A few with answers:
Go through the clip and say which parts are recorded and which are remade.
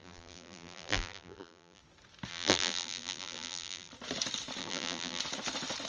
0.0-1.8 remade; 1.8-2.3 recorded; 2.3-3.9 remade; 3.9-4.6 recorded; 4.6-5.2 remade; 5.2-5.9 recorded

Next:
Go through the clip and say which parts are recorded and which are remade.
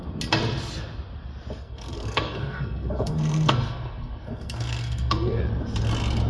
0.0-1.6 recorded; 1.6-5.4 remade; 5.4-6.3 recorded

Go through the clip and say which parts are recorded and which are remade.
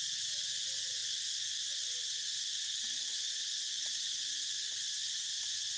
0.0-5.8 recorded